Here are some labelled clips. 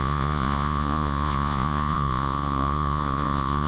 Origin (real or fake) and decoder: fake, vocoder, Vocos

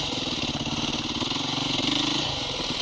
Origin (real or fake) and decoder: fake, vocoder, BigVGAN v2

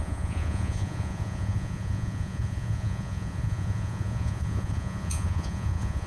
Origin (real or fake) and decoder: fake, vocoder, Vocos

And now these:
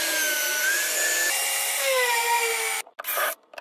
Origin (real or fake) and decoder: real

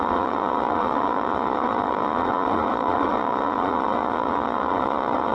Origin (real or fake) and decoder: fake, vocoder, Vocos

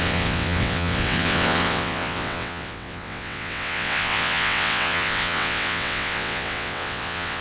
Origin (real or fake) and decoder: fake, vocoder, WaveNeXt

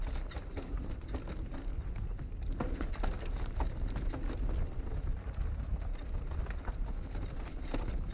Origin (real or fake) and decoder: real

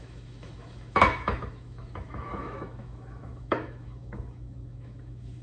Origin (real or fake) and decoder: fake, autoencoder, DAC-VAE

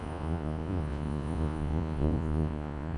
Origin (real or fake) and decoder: fake, vocoder, Vocos